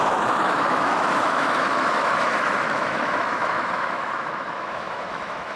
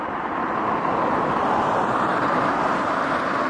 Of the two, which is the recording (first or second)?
second